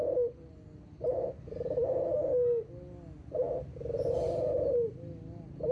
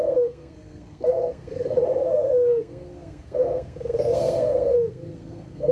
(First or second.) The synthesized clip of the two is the second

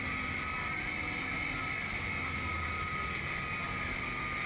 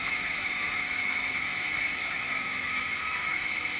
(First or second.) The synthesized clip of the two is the second